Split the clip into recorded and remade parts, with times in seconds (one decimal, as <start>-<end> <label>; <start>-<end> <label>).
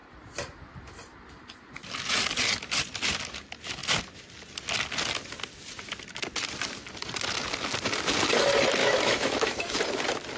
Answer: 0.0-8.8 recorded; 8.8-9.8 remade; 9.8-10.4 recorded